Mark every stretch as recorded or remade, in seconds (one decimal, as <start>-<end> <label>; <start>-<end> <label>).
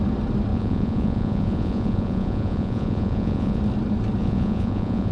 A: 0.0-0.5 recorded; 0.5-3.6 remade; 3.6-4.2 recorded; 4.2-5.1 remade